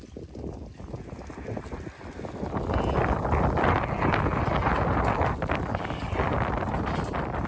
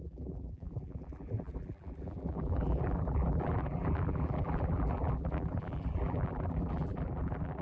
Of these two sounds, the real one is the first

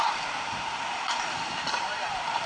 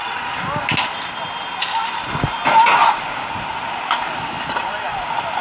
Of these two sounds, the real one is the second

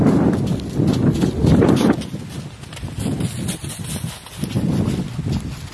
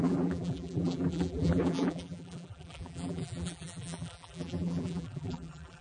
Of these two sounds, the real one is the first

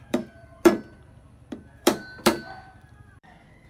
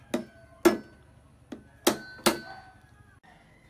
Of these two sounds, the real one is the second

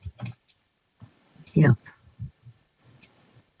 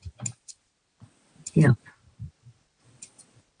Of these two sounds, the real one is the second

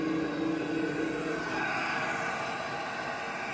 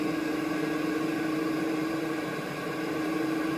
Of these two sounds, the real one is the first